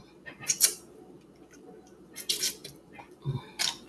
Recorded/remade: remade